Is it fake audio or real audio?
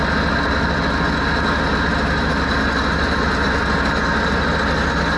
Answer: real